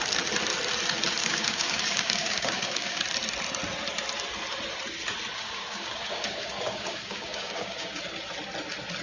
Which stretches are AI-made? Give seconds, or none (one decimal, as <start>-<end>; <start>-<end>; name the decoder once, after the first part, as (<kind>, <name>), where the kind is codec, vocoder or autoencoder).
1.2-3.0 (codec, DAC); 5.3-8.0